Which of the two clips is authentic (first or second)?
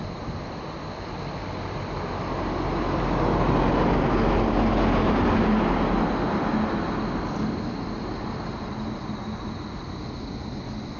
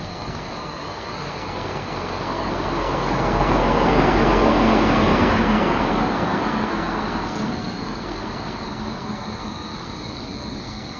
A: first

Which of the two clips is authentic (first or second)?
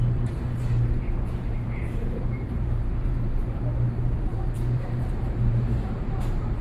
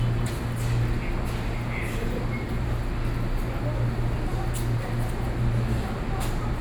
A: second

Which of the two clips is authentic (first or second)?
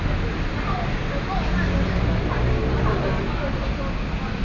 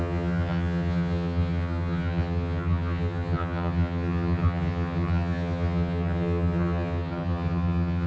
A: first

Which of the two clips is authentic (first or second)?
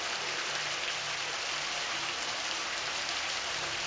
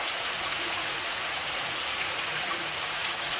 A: first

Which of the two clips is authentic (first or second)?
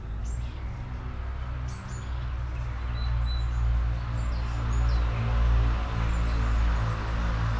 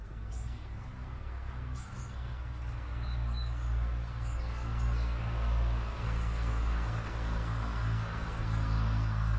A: first